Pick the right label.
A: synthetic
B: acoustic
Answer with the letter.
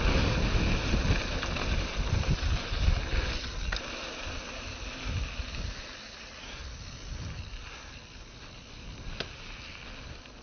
B